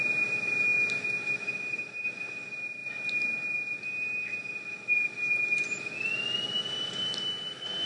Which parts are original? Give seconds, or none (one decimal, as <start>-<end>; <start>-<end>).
0.0-7.9

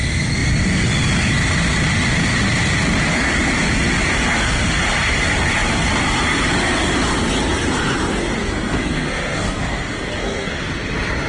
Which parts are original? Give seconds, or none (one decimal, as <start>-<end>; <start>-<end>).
0.0-8.4; 10.6-11.3